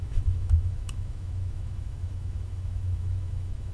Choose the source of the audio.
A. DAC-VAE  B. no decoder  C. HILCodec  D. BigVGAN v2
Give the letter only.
A